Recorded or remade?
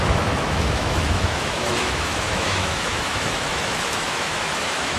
remade